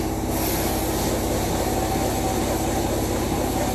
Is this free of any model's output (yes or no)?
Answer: yes